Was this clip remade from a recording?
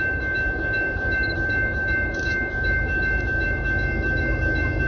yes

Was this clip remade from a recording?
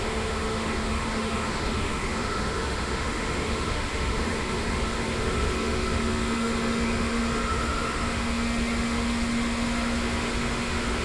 yes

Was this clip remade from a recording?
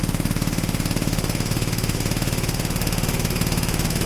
yes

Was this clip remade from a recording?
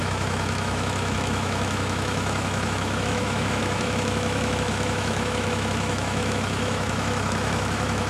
yes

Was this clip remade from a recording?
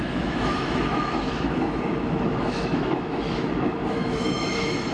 yes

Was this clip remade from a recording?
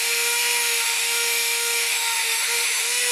yes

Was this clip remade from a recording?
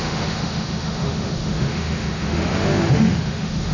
yes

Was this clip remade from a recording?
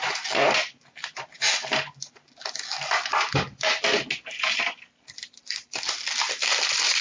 no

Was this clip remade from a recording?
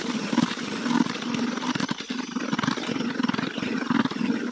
no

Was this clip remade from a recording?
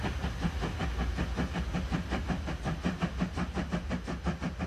no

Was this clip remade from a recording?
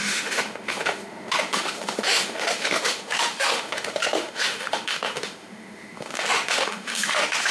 yes